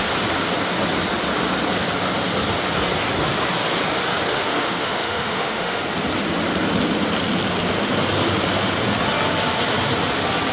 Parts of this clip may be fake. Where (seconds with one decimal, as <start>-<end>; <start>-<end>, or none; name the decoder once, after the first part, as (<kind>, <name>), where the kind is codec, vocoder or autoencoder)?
4.3-5.8 (autoencoder, DAC-VAE)